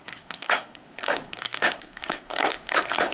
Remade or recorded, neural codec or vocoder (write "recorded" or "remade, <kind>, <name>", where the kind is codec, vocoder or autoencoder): remade, codec, SNAC